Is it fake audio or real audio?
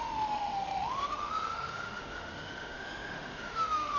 fake